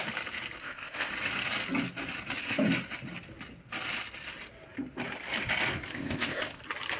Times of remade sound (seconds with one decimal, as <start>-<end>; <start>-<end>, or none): 0.6-1.1; 5.9-6.6